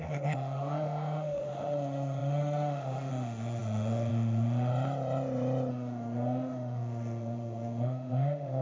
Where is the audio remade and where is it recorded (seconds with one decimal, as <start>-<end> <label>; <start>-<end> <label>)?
0.0-4.7 remade; 4.7-5.7 recorded; 5.7-8.6 remade